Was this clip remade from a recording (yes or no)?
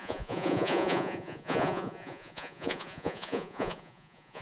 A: yes